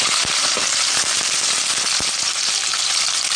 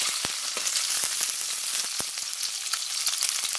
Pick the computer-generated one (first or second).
first